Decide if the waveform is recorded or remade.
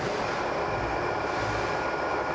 recorded